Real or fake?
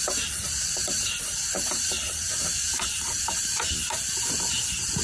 fake